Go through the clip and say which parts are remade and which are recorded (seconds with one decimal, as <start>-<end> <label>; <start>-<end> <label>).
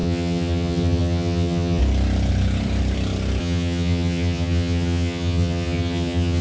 0.0-1.8 remade; 1.8-3.4 recorded; 3.4-6.4 remade